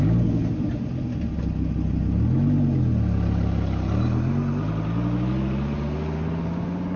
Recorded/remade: recorded